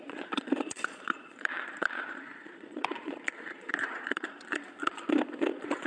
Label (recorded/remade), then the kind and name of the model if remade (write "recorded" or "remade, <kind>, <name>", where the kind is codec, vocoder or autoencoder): remade, vocoder, Vocos